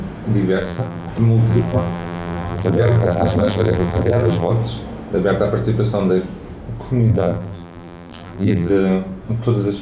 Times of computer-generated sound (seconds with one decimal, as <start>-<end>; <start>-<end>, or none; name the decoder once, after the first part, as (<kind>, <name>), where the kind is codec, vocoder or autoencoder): 0.6-1.1 (vocoder, BigVGAN v2); 1.5-4.5; 7.1-8.7